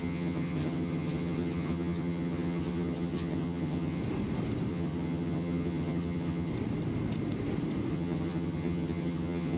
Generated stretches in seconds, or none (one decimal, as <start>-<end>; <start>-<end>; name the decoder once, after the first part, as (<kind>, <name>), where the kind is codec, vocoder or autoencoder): 0.0-4.0 (vocoder, HiFi-GAN); 4.7-6.5; 7.9-9.6